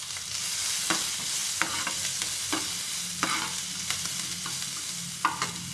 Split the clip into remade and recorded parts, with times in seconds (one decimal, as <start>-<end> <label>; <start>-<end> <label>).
0.0-5.7 recorded